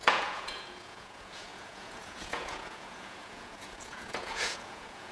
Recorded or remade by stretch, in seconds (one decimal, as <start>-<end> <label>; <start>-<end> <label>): 0.0-5.1 remade